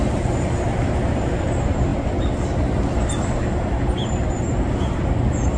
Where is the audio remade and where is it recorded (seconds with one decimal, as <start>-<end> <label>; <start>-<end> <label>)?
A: 0.0-5.6 recorded